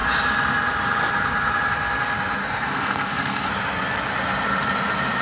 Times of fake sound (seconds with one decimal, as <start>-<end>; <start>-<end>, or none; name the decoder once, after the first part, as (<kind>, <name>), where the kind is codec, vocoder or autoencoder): 2.4-3.5 (codec, SNAC)